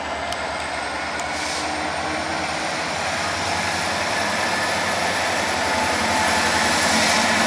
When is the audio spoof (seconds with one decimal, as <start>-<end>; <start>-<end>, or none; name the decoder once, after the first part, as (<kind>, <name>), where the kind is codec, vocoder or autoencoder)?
2.3-6.2 (vocoder, BigVGAN v2)

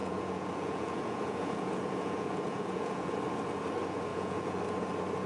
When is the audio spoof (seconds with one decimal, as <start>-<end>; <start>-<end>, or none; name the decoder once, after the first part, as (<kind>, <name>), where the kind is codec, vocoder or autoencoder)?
0.0-3.2 (vocoder, Vocos); 4.1-4.6